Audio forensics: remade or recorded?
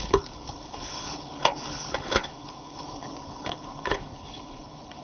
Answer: remade